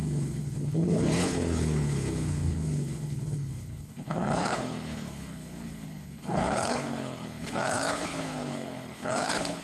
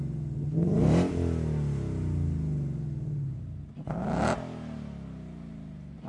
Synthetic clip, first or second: first